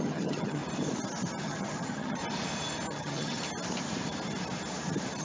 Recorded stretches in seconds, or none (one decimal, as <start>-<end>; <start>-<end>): 0.6-1.4; 2.2-2.9; 3.4-5.2